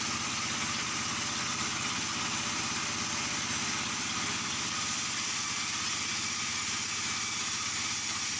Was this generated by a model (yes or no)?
no